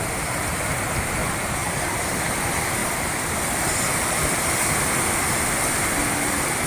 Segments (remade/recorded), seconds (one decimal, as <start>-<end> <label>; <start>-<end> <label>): 0.0-1.2 recorded; 1.2-2.0 remade; 2.0-2.8 recorded; 2.8-4.5 remade; 4.5-6.7 recorded